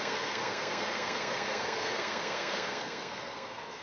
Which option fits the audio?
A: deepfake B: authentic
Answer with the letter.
A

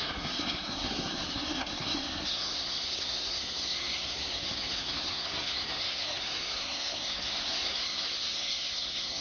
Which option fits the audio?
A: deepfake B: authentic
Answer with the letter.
A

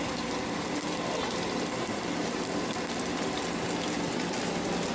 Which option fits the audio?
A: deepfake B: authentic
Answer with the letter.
B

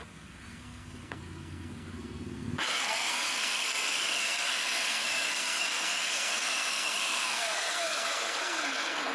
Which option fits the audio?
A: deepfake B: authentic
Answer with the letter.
A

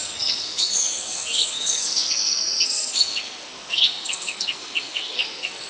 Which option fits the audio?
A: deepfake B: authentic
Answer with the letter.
A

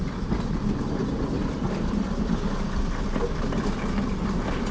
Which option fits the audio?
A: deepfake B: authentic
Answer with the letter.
B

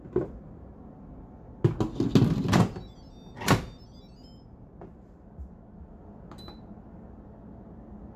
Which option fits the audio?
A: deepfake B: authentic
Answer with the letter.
B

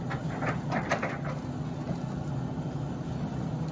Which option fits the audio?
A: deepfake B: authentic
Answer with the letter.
B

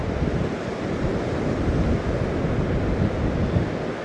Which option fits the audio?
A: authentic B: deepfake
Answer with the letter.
A